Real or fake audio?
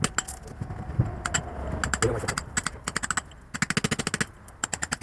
real